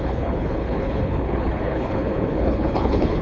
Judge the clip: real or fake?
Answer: fake